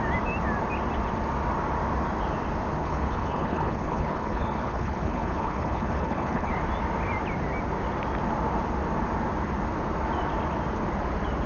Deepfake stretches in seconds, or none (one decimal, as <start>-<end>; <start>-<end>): 2.8-6.5